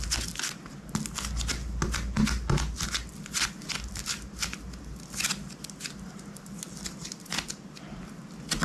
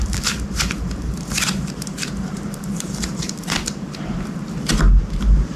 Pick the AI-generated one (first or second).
second